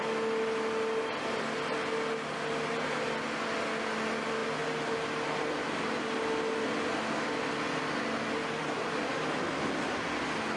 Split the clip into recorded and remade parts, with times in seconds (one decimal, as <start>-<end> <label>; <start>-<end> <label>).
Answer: 0.0-10.6 recorded